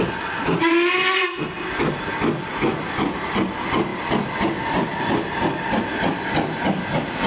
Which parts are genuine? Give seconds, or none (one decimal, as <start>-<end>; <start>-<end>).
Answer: 0.0-7.3